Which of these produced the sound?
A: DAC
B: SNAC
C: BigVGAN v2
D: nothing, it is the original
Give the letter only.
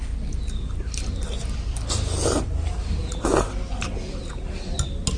D